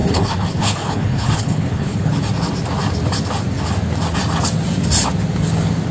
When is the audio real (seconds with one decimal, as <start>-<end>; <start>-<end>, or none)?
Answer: 2.1-5.9